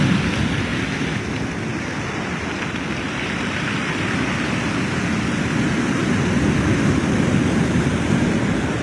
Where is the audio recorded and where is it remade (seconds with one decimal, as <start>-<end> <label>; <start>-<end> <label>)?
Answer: 0.0-8.8 recorded

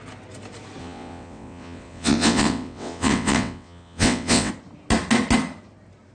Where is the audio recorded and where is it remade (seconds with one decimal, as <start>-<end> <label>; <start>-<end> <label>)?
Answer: 0.0-0.8 recorded; 0.8-4.5 remade; 4.5-6.1 recorded

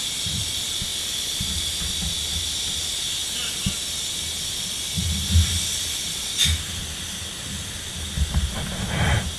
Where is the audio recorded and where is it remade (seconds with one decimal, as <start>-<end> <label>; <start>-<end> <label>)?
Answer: 0.0-9.4 recorded

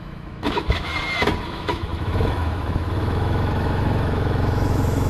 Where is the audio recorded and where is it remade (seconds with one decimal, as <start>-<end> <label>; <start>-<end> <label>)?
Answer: 0.0-0.9 remade; 0.9-1.5 recorded; 1.5-5.1 remade

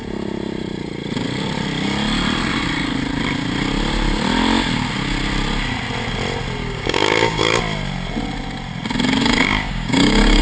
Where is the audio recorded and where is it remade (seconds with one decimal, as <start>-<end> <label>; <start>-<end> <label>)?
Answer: 0.0-6.6 recorded; 6.6-7.6 remade; 7.6-9.2 recorded; 9.2-10.4 remade

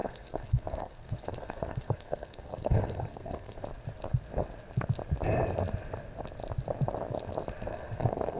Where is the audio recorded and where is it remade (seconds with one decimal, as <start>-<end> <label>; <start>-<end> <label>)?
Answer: 0.0-3.6 remade; 3.6-7.7 recorded; 7.7-8.4 remade

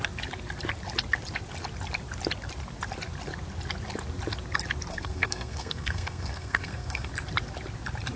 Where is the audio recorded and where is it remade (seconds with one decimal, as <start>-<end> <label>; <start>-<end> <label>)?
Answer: 0.0-4.9 recorded; 4.9-7.1 remade; 7.1-8.2 recorded

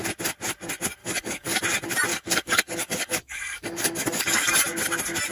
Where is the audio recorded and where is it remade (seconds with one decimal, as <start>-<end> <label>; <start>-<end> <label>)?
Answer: 0.0-1.0 recorded; 1.0-1.6 remade; 1.6-2.1 recorded; 2.1-4.5 remade; 4.5-5.3 recorded